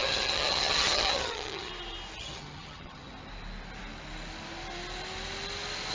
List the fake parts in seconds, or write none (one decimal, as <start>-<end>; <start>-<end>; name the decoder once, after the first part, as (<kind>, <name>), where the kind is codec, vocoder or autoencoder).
0.0-1.7 (vocoder, HiFi-GAN); 2.2-3.1